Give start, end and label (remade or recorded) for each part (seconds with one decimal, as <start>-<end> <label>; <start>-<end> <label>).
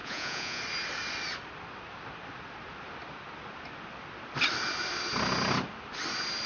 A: 0.0-0.6 remade; 0.6-6.5 recorded